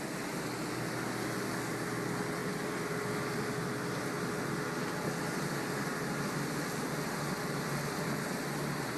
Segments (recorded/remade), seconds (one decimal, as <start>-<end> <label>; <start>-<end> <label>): 0.0-9.0 recorded